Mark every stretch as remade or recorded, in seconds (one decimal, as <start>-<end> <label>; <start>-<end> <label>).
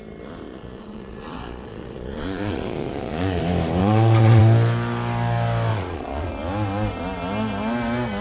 0.0-0.5 recorded; 0.5-3.4 remade; 3.4-3.8 recorded; 3.8-4.4 remade; 4.4-5.7 recorded; 5.7-6.3 remade; 6.3-8.2 recorded